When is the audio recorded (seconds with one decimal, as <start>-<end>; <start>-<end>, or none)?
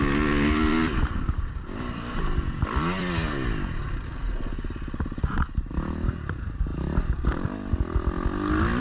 0.0-8.8